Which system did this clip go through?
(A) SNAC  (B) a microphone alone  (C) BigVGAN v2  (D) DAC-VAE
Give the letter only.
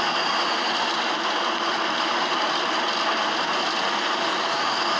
B